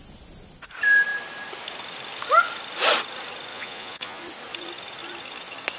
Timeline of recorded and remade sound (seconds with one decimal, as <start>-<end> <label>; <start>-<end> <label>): 0.0-3.5 recorded; 3.5-4.2 remade; 4.2-5.8 recorded